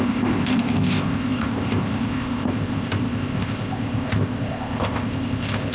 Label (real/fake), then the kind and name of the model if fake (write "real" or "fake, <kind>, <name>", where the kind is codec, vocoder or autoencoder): fake, codec, ZipCodec